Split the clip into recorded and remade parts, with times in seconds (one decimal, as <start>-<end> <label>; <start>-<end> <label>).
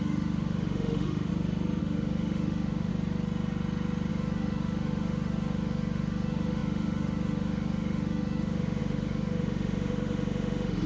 0.0-1.3 remade; 1.3-1.8 recorded; 1.8-2.9 remade; 2.9-4.1 recorded; 4.1-10.9 remade